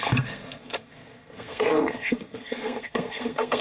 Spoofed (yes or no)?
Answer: yes